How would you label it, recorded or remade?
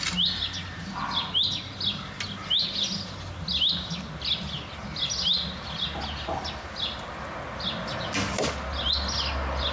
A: recorded